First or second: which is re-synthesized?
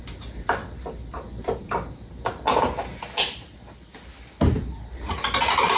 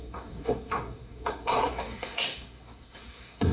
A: second